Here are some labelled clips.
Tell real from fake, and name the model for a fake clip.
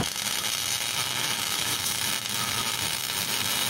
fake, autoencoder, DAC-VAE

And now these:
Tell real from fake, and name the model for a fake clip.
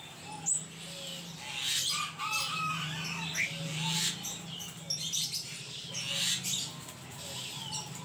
real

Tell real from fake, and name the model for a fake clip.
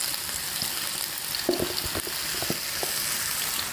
real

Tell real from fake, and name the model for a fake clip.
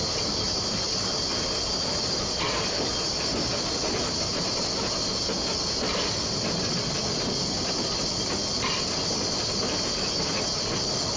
real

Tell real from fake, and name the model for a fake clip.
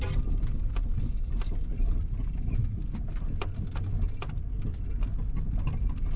real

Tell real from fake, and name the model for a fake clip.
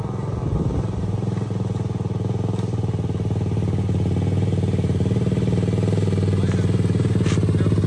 real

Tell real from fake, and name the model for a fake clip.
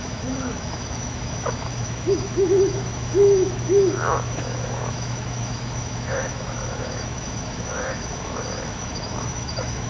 fake, autoencoder, DAC-VAE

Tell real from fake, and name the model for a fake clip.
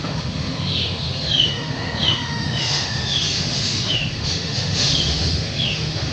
fake, autoencoder, DAC-VAE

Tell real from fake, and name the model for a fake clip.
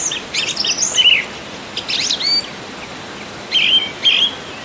real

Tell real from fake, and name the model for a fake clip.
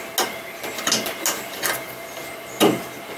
real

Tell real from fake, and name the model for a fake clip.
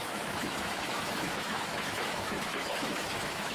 fake, autoencoder, DAC-VAE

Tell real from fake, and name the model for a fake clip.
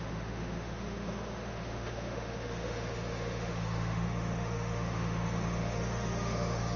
fake, autoencoder, DAC-VAE